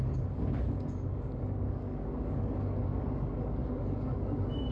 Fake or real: fake